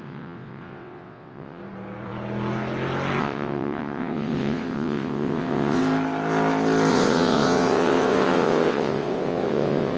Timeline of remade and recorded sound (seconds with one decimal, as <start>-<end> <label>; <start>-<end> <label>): 0.0-1.6 remade; 1.6-3.2 recorded; 3.2-5.8 remade; 5.8-6.9 recorded; 6.9-10.0 remade